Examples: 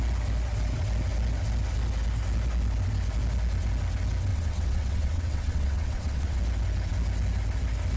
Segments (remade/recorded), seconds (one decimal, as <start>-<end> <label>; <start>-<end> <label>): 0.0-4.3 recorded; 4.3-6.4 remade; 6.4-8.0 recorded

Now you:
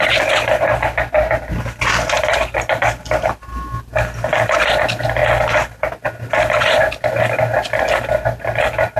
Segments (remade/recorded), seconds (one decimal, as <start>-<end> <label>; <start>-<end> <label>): 0.0-1.9 recorded; 1.9-4.7 remade; 4.7-9.0 recorded

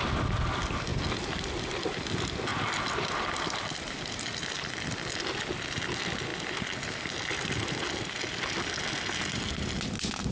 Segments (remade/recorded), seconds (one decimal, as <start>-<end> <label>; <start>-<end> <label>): 0.0-10.3 recorded

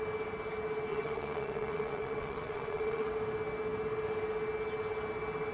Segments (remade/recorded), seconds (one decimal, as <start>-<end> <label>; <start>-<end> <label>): 0.0-0.9 recorded; 0.9-3.1 remade; 3.1-5.5 recorded